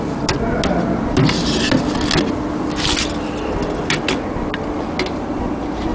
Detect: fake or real real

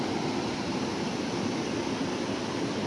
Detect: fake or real real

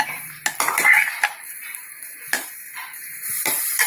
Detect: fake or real real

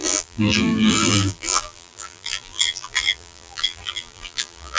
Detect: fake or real fake